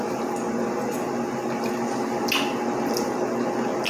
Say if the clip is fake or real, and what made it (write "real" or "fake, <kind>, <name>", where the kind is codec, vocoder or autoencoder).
real